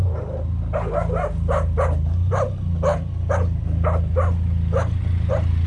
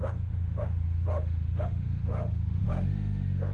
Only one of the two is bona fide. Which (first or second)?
first